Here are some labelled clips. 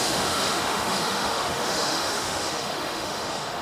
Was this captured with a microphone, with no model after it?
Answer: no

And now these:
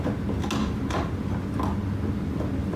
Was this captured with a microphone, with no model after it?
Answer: yes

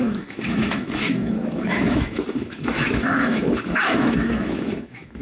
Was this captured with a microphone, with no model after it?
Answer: no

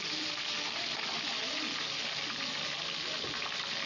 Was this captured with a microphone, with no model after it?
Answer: yes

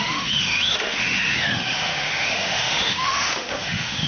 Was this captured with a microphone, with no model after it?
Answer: no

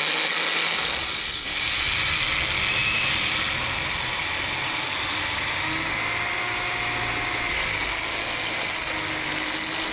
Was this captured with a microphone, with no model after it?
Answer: yes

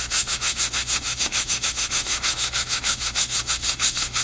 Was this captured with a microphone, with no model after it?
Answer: no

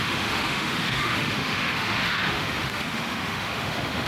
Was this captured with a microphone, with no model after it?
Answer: no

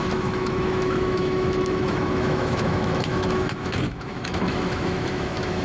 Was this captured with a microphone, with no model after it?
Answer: no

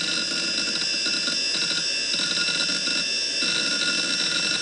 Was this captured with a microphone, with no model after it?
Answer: yes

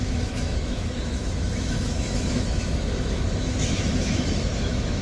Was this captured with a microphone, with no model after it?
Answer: no